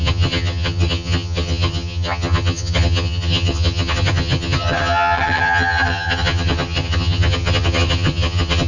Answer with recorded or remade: remade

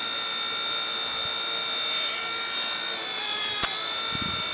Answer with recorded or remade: recorded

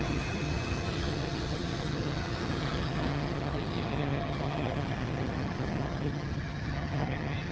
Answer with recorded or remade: remade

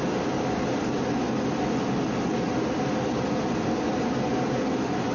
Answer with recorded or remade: recorded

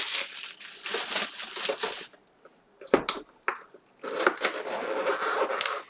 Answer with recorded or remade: recorded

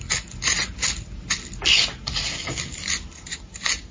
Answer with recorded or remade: recorded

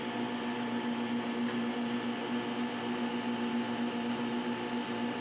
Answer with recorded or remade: recorded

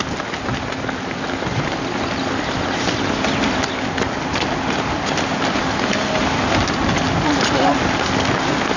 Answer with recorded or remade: recorded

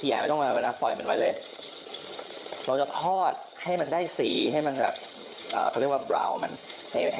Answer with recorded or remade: remade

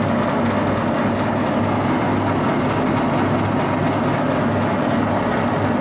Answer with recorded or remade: recorded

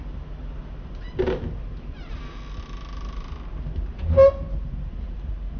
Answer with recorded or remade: recorded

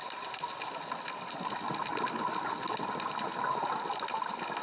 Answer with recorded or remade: recorded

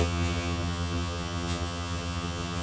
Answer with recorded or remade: remade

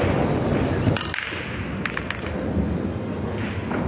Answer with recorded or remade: recorded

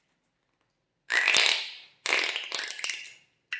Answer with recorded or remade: recorded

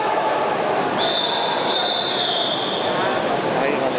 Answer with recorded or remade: recorded